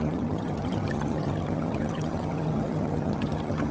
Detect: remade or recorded remade